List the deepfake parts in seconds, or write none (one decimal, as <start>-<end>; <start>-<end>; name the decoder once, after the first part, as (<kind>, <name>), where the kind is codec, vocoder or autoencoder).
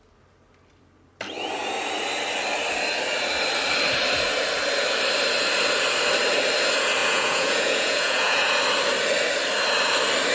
7.0-8.6 (vocoder, Vocos)